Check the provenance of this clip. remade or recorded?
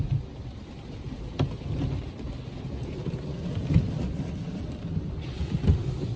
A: recorded